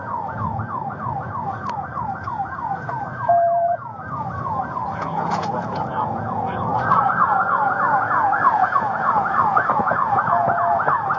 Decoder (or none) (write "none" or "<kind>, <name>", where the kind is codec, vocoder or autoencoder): vocoder, Vocos